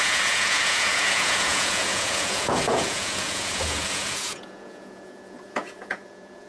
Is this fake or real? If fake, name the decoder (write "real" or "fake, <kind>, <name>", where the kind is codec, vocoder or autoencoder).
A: fake, vocoder, Vocos